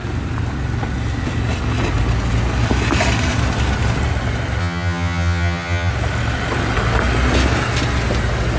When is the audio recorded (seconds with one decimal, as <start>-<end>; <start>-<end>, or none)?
0.0-4.6; 5.9-8.6